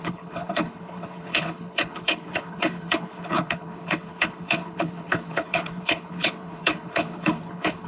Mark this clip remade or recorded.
remade